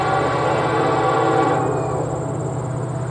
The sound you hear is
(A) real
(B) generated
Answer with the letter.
A